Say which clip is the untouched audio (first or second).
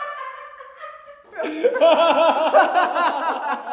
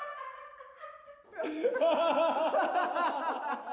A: first